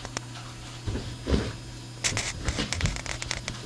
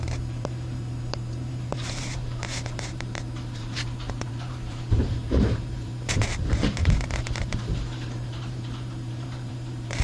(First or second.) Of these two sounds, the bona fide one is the first